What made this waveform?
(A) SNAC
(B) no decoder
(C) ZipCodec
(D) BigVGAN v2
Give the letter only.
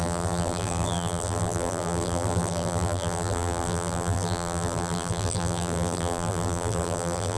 D